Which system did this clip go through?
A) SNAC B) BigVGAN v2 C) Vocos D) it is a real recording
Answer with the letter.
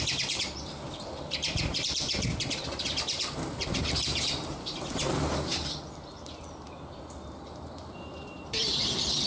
B